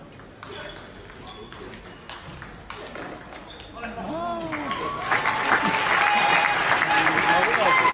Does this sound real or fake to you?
real